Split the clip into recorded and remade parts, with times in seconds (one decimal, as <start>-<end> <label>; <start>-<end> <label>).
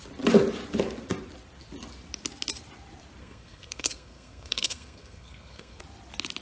0.0-3.2 recorded; 3.2-5.8 remade; 5.8-6.4 recorded